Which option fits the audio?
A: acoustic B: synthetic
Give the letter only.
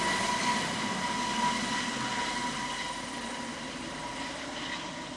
A